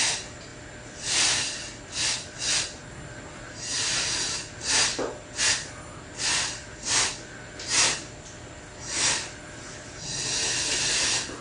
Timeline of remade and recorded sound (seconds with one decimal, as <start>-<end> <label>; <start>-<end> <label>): 0.0-11.4 recorded

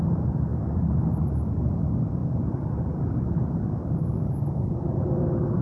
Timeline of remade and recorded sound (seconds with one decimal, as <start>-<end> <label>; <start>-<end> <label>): 0.0-0.5 recorded; 0.5-1.5 remade; 1.5-2.2 recorded; 2.2-3.0 remade; 3.0-5.6 recorded